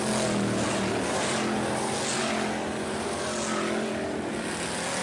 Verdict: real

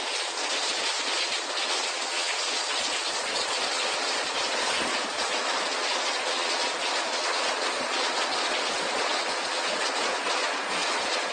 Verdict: fake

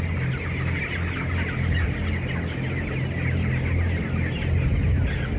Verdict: real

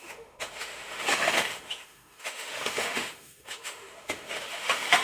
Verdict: fake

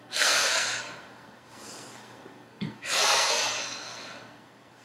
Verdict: fake